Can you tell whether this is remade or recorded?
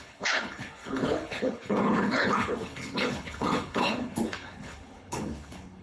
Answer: remade